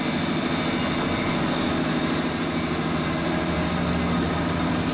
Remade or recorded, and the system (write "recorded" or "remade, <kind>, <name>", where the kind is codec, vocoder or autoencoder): recorded